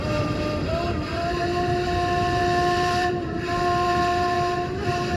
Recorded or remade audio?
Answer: remade